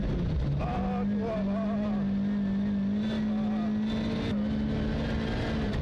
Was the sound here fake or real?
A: real